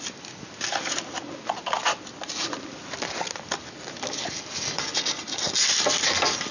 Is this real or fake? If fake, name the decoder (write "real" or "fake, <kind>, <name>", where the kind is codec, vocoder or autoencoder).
real